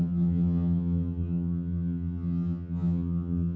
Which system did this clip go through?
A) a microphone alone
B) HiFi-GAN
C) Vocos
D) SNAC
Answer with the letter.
B